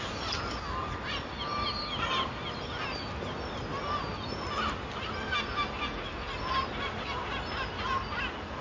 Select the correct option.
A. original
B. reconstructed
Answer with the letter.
A